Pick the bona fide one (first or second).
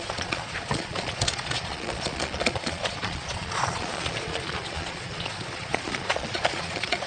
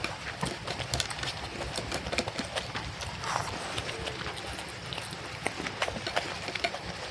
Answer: second